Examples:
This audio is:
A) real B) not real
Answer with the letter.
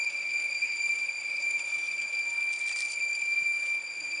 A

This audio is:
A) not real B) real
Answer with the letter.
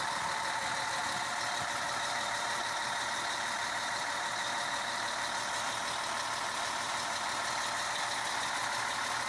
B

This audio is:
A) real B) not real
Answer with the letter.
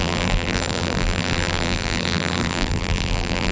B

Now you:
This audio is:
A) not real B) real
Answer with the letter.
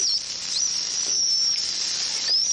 A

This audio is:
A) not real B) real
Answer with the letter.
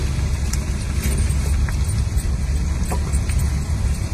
B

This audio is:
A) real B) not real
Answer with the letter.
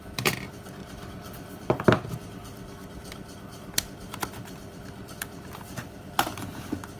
B